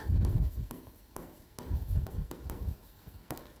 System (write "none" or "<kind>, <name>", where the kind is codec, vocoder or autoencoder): codec, SNAC